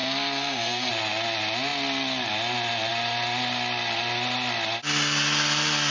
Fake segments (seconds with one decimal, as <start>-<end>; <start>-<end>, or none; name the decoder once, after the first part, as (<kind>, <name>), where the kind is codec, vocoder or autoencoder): 0.0-0.9 (codec, SNAC)